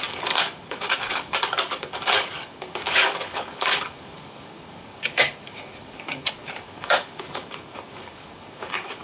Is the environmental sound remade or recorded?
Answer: remade